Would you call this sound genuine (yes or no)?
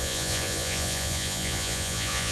no